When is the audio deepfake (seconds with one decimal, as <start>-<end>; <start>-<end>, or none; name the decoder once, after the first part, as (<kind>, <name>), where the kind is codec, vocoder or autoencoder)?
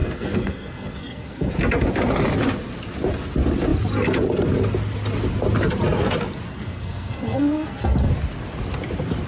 0.0-1.5 (codec, SNAC); 6.5-8.1